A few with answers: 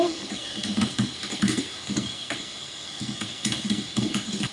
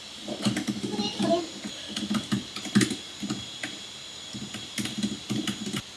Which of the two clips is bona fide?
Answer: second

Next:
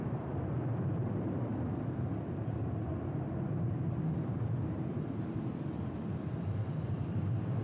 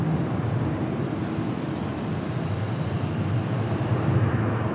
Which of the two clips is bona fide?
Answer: second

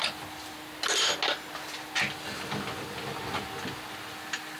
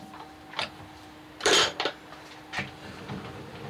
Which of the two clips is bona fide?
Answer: first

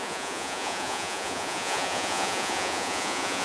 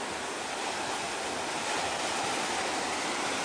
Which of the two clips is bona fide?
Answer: second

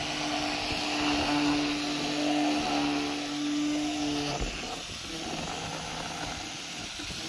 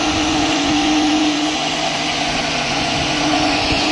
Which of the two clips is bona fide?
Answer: first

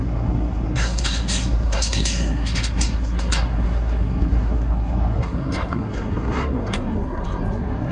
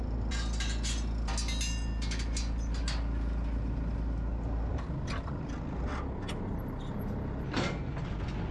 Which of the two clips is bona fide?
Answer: second